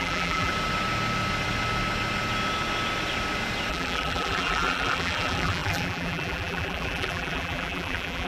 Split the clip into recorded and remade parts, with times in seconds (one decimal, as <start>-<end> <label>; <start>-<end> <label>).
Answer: 0.0-0.5 remade; 0.5-3.7 recorded; 3.7-8.3 remade